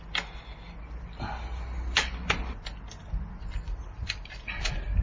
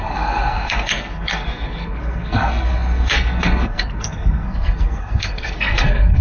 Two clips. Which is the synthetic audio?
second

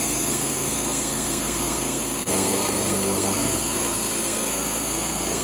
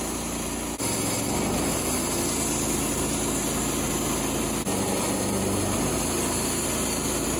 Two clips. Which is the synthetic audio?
first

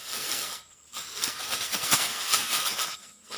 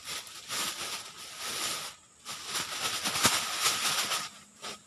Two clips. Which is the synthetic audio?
first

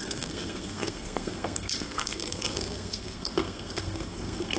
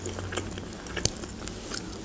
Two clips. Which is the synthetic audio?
first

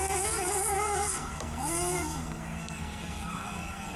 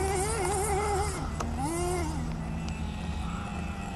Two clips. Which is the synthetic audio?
first